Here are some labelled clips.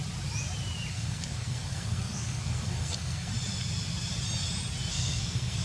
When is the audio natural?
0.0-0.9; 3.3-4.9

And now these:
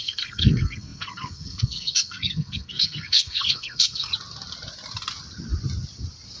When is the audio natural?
4.1-6.4

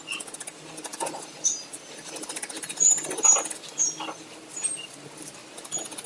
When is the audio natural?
0.0-6.1

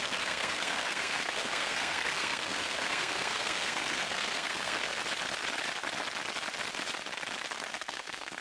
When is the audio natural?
5.0-7.7

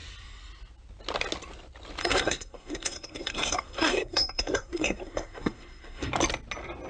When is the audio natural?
0.0-2.0; 6.1-6.9

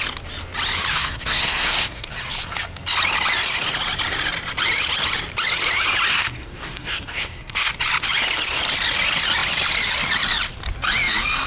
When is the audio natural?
0.0-0.9; 2.1-6.1; 7.7-11.5

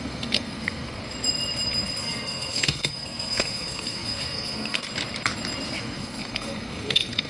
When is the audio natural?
1.0-2.0; 4.8-5.8

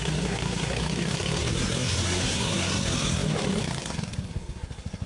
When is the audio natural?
none